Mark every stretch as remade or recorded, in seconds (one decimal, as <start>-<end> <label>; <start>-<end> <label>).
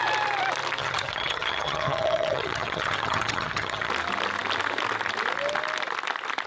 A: 0.0-0.8 recorded; 0.8-3.9 remade; 3.9-6.5 recorded